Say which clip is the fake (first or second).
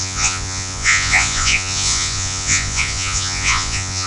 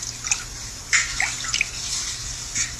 first